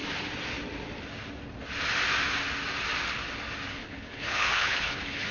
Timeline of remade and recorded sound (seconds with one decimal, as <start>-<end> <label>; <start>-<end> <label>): 0.0-3.8 recorded; 3.8-5.3 remade